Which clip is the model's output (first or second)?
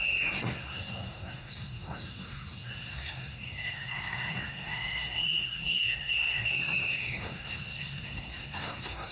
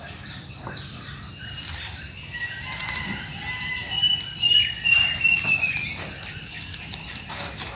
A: first